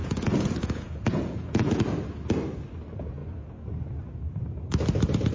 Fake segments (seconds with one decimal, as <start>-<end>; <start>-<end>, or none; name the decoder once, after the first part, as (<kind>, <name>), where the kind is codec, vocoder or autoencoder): 0.0-2.0 (vocoder, Vocos)